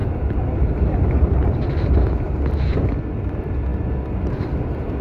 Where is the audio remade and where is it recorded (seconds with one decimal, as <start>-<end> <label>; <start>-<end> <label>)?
0.0-3.0 remade; 3.0-3.7 recorded; 3.7-5.0 remade